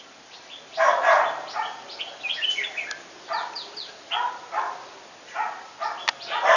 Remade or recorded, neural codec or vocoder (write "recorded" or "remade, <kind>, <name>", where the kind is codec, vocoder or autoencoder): recorded